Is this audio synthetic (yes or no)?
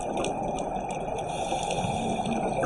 no